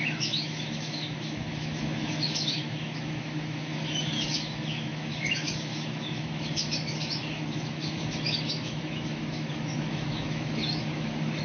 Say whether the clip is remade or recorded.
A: remade